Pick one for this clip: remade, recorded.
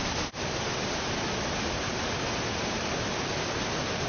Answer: recorded